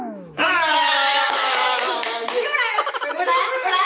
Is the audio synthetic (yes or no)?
yes